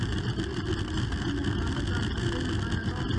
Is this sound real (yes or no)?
yes